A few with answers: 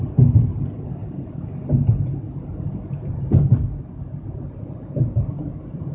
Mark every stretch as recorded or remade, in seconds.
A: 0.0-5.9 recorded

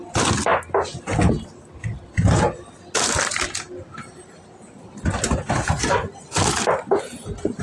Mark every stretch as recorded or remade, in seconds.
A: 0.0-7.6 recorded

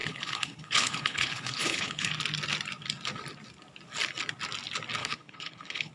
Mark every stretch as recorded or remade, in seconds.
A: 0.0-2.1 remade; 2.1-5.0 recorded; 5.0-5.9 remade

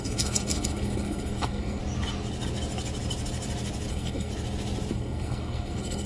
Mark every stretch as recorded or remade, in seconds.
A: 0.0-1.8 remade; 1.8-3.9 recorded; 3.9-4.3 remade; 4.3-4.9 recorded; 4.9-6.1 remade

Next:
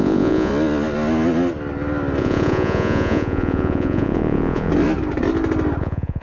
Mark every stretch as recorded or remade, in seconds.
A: 0.0-0.5 remade; 0.5-2.2 recorded; 2.2-4.7 remade; 4.7-5.8 recorded; 5.8-6.2 remade

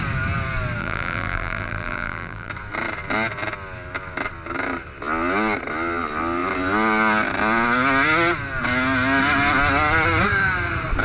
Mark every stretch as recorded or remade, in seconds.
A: 0.0-0.8 recorded; 0.8-2.5 remade; 2.5-11.0 recorded

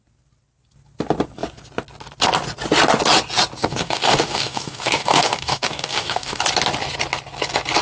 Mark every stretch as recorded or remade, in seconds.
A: 0.0-3.6 recorded; 3.6-6.4 remade; 6.4-7.8 recorded

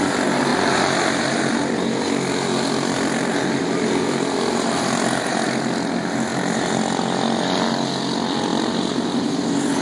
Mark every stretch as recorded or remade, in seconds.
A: 0.0-0.5 recorded; 0.5-5.3 remade; 5.3-6.3 recorded; 6.3-7.0 remade; 7.0-8.5 recorded; 8.5-9.8 remade